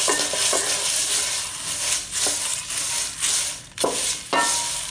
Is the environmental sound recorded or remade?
recorded